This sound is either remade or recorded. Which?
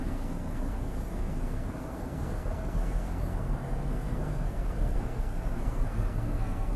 remade